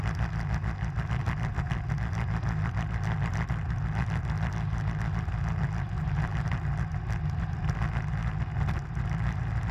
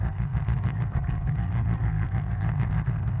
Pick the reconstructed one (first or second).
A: second